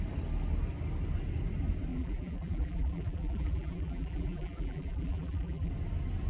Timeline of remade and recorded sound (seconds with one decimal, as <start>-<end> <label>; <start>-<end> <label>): 0.0-1.9 recorded; 1.9-5.7 remade; 5.7-6.3 recorded